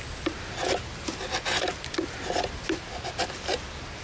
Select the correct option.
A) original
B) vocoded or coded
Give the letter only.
A